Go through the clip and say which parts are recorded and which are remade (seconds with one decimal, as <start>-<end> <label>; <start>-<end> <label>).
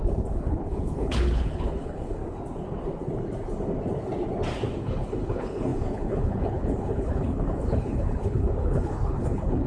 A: 0.0-2.2 remade; 2.2-4.8 recorded; 4.8-9.7 remade